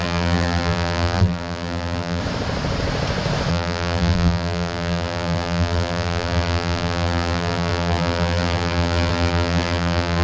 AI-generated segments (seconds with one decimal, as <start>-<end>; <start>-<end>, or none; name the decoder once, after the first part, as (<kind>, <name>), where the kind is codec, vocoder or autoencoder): 0.0-2.2 (vocoder, BigVGAN v2); 3.5-10.2